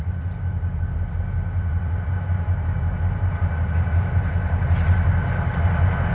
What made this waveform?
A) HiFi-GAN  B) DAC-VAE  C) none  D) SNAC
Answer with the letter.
C